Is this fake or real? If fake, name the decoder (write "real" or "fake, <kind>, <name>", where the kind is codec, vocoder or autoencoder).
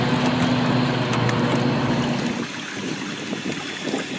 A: real